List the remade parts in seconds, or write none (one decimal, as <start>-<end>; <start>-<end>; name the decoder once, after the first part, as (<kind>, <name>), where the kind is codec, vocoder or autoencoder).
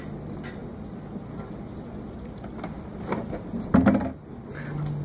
0.6-3.6 (vocoder, BigVGAN v2)